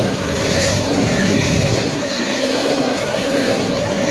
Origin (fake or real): fake